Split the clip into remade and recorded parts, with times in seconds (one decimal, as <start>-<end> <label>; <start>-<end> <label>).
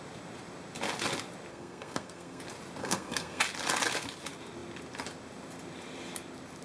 0.0-1.5 recorded; 1.5-2.4 remade; 2.4-2.8 recorded; 2.8-3.4 remade; 3.4-6.6 recorded